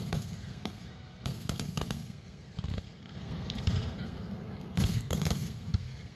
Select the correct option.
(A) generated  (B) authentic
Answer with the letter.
A